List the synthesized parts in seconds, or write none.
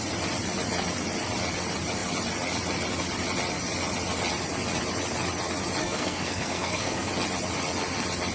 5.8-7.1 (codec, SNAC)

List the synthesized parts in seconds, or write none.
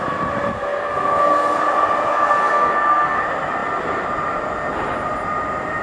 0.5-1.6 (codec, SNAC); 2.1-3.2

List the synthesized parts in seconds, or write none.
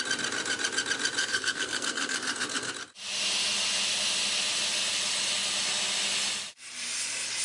1.2-2.7 (codec, SNAC)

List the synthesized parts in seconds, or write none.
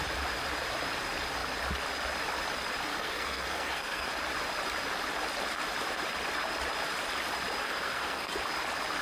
2.9-4.1 (codec, SNAC); 7.6-8.3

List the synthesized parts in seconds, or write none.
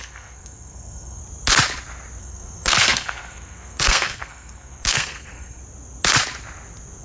0.0-1.2 (codec, SNAC); 2.2-5.6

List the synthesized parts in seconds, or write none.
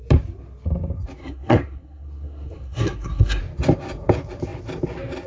1.2-3.4 (codec, SNAC)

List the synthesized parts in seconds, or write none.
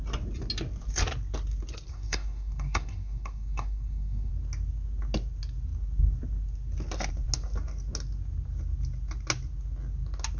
1.9-4.3 (codec, SNAC)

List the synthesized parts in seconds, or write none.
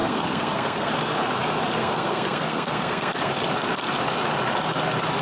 0.0-0.9 (codec, SNAC); 1.8-3.3